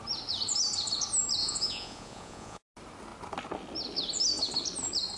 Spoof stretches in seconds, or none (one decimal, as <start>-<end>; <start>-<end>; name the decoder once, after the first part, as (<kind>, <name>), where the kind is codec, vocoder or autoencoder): 1.4-2.6 (vocoder, Vocos)

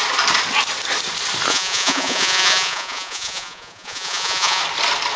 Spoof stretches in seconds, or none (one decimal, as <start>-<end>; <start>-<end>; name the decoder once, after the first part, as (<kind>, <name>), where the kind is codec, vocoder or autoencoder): 1.5-4.6 (vocoder, Vocos)

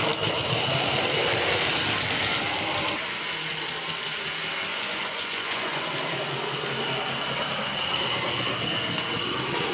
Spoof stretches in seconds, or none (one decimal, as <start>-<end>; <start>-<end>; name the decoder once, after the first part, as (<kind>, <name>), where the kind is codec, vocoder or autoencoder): 4.7-5.9 (vocoder, Vocos)

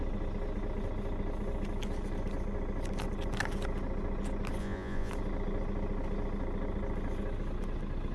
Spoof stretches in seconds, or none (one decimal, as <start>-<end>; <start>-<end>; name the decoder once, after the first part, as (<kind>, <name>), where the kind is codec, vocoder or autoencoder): 4.6-5.1 (vocoder, Vocos)

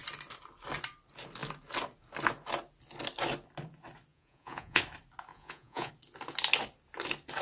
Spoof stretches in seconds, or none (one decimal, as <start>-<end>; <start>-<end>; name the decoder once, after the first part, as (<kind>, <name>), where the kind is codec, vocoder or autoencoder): 4.1-4.8 (vocoder, Vocos); 5.3-5.9

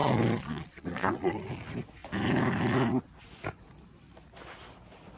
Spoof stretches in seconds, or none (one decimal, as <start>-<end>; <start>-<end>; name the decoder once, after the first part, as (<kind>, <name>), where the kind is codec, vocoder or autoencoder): 0.0-1.5 (vocoder, Vocos)